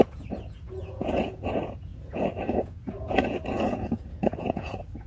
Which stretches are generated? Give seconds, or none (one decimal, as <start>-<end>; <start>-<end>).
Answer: 0.0-5.1